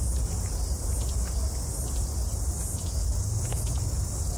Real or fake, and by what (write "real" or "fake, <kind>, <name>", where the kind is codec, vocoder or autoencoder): real